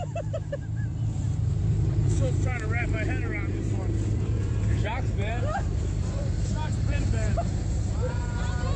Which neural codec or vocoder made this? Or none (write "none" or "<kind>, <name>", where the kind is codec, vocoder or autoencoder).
vocoder, BigVGAN v2